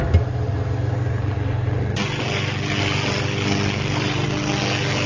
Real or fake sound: real